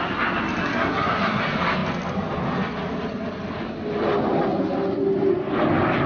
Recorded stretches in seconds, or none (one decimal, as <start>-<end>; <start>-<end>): 0.0-0.6; 1.4-6.1